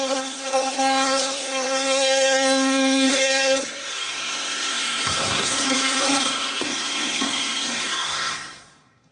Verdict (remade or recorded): remade